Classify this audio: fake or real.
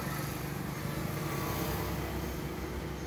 real